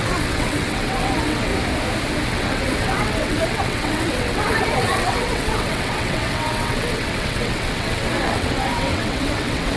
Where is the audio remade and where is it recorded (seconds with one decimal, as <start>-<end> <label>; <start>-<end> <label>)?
0.0-1.5 remade; 1.5-2.3 recorded; 2.3-9.8 remade